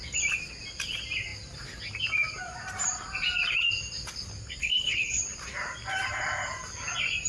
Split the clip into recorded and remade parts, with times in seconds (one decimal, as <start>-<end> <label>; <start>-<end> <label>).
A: 0.0-4.6 recorded; 4.6-5.2 remade; 5.2-7.3 recorded

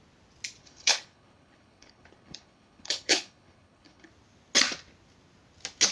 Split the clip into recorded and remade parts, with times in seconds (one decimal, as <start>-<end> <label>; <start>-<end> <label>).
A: 0.0-0.6 recorded; 0.6-4.1 remade; 4.1-5.9 recorded

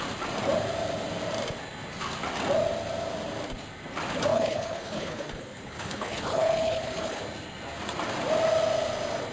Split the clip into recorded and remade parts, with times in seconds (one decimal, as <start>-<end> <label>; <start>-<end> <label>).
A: 0.0-4.3 recorded; 4.3-7.2 remade; 7.2-9.3 recorded